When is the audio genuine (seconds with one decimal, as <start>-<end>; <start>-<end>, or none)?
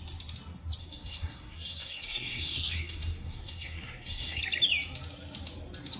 0.0-0.8; 4.4-6.0